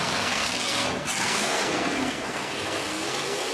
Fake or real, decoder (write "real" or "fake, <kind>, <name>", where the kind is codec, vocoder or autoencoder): fake, codec, SNAC